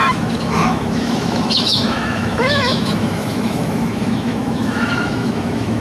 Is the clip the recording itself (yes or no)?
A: no